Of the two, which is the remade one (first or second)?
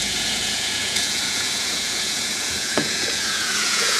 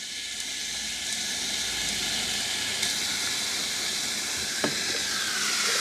first